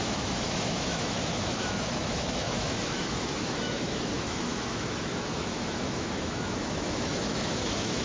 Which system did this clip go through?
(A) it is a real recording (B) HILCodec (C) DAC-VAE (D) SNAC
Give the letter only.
C